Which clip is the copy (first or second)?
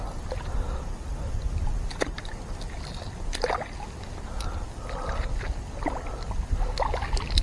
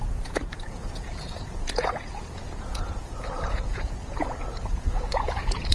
second